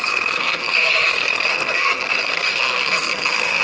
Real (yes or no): no